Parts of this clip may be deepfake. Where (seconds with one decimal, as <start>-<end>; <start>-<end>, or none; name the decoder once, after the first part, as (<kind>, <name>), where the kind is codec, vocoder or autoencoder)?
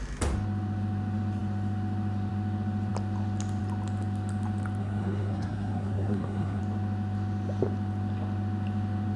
4.8-6.6 (codec, SNAC)